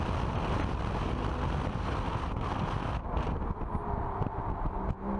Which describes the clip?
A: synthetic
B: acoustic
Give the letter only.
B